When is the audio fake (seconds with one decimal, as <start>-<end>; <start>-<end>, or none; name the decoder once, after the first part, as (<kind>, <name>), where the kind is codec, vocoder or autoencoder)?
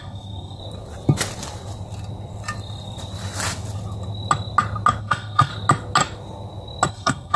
0.0-0.6 (codec, SNAC); 5.0-5.5; 6.9-7.4